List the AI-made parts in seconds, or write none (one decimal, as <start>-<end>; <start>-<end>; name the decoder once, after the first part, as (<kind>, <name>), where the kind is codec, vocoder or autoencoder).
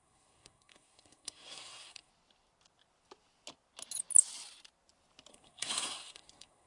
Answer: 0.0-2.1 (codec, SNAC); 5.3-6.7